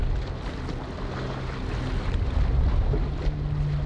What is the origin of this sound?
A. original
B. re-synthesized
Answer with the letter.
A